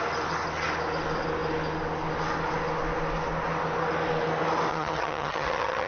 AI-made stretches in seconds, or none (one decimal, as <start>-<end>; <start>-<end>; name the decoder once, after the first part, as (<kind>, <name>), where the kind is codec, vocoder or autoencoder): 4.7-5.9 (vocoder, HiFi-GAN)